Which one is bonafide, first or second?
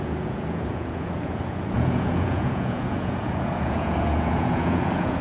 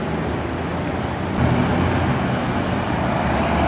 second